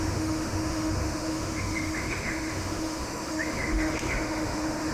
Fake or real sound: fake